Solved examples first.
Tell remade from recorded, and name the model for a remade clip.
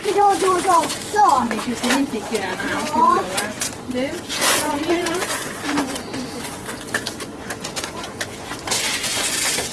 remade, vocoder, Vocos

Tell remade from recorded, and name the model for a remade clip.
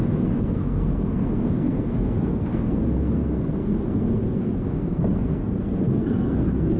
remade, codec, SNAC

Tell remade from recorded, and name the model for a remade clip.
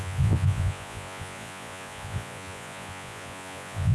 remade, vocoder, Vocos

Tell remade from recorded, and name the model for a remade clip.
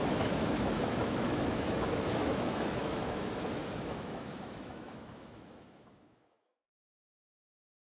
remade, autoencoder, DAC-VAE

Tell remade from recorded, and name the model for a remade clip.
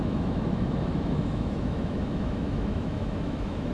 remade, autoencoder, DAC-VAE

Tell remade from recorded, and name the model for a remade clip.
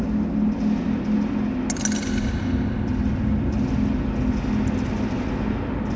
recorded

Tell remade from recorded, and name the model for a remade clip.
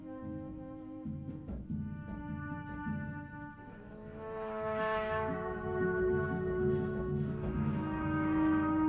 remade, autoencoder, DAC-VAE